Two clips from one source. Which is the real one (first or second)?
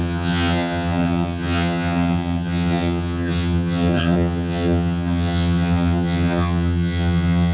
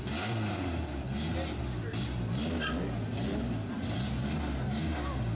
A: second